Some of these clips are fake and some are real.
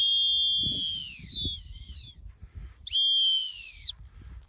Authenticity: real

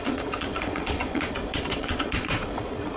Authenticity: fake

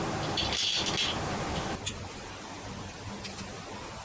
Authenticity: real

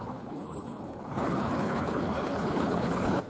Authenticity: fake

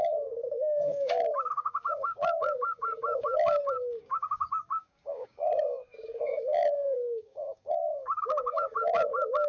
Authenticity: fake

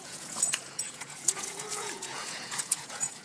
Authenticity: fake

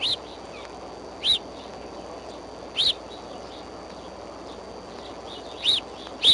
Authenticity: real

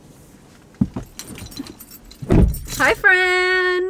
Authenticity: real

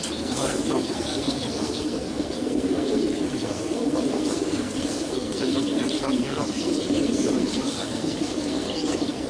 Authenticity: fake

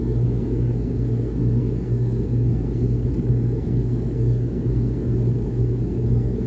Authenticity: fake